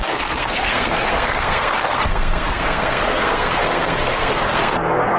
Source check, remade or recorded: remade